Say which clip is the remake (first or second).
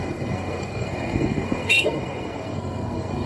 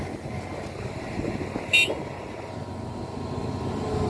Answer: first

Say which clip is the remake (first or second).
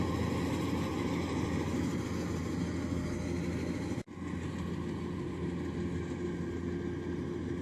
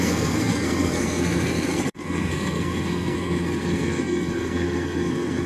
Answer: second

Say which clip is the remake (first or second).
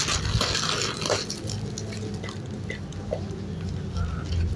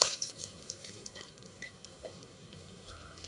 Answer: second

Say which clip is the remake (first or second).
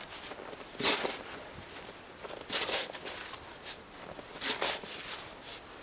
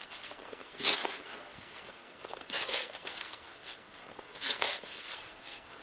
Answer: second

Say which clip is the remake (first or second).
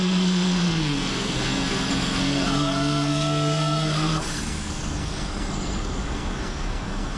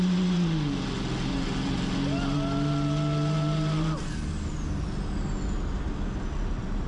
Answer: first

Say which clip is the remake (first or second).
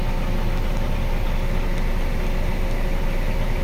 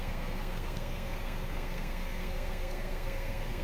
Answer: second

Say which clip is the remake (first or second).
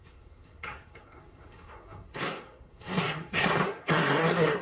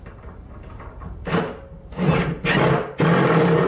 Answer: first